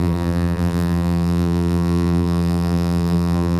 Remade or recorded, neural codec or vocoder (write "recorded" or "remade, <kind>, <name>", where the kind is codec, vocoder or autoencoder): remade, vocoder, BigVGAN v2